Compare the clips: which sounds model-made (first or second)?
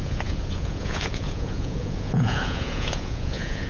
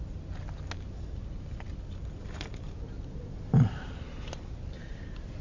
first